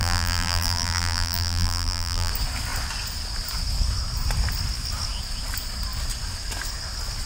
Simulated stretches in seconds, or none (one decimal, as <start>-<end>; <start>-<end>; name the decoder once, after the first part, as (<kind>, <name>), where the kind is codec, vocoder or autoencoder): 0.0-2.3 (vocoder, BigVGAN v2)